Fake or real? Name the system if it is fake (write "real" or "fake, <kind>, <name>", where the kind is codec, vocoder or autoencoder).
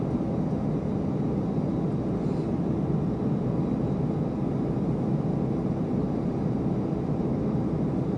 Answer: real